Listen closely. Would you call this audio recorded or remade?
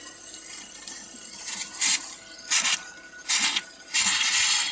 recorded